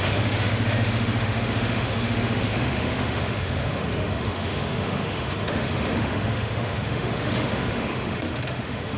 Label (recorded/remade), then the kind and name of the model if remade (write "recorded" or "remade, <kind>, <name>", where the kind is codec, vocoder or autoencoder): remade, autoencoder, DAC-VAE